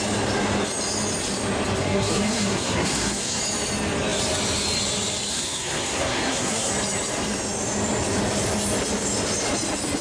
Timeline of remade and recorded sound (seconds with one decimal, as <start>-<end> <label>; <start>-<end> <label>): 0.0-1.8 recorded; 1.8-3.4 remade; 3.4-5.3 recorded; 5.3-6.7 remade; 6.7-10.0 recorded